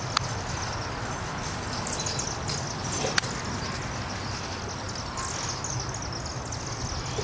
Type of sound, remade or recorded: recorded